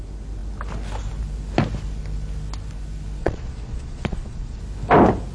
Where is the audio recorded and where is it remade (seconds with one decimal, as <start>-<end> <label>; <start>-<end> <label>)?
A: 0.0-3.2 recorded; 3.2-4.6 remade; 4.6-5.3 recorded